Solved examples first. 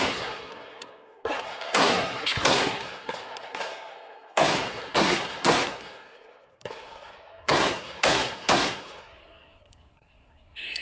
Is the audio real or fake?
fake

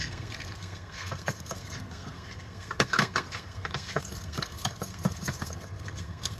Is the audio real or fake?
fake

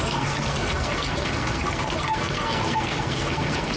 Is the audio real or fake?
fake